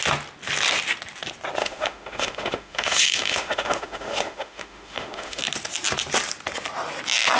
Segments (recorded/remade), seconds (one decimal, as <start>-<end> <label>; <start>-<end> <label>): 0.0-1.6 recorded; 1.6-5.4 remade; 5.4-7.4 recorded